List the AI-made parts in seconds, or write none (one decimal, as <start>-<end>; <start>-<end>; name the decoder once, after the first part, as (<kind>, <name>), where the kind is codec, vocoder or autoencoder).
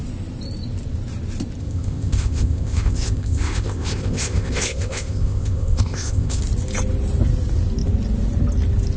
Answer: 1.6-6.4 (codec, ZipCodec)